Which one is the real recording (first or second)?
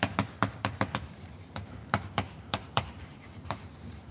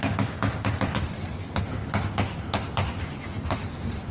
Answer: second